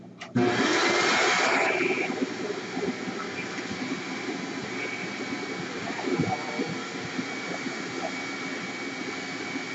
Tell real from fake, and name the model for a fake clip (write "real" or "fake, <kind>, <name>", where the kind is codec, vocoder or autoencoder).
real